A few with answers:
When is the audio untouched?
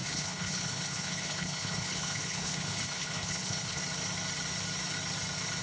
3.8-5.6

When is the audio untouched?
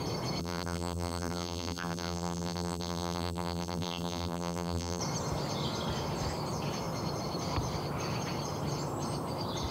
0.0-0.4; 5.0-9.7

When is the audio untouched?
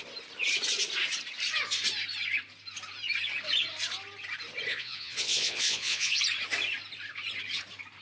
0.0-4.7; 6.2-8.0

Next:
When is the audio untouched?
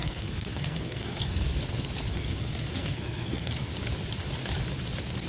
1.5-2.1; 3.7-5.3